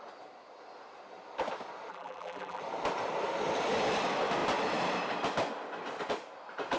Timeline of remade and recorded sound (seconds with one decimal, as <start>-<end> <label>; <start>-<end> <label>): 0.0-1.9 recorded; 1.9-2.6 remade; 2.6-6.8 recorded